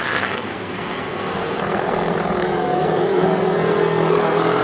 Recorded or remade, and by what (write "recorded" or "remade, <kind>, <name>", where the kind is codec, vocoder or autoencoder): remade, codec, SNAC